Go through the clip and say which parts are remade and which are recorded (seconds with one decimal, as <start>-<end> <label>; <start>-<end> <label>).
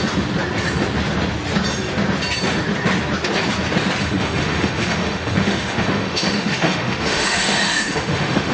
0.0-4.0 recorded; 4.0-8.5 remade